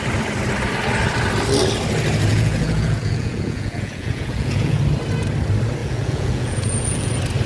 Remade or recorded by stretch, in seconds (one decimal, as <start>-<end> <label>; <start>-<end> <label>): 0.0-2.3 recorded; 2.3-4.8 remade; 4.8-5.8 recorded; 5.8-7.1 remade; 7.1-7.5 recorded